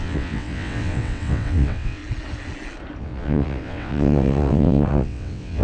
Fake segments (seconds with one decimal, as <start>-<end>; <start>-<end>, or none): 0.0-2.0; 3.0-5.6